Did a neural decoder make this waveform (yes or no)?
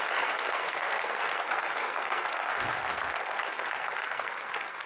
yes